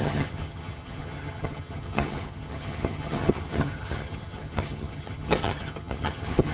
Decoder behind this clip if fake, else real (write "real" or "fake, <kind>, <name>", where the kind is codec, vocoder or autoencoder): fake, vocoder, HiFi-GAN